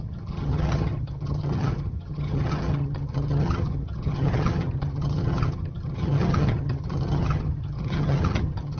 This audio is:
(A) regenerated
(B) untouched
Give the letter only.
A